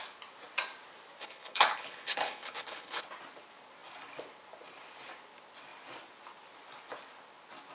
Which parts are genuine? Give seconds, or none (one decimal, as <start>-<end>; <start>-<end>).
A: 0.0-1.2; 3.0-7.7